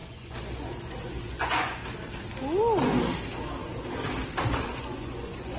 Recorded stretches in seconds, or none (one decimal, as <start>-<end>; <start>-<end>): 1.8-4.4